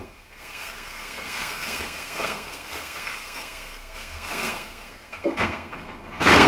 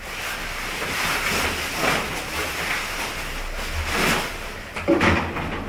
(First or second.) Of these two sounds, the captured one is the second